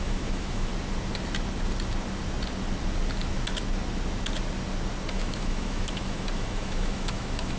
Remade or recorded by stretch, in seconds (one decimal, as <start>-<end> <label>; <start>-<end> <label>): 0.0-0.7 remade; 0.7-5.1 recorded; 5.1-7.6 remade